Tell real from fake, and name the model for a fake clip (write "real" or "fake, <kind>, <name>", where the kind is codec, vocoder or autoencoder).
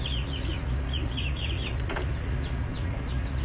fake, vocoder, Vocos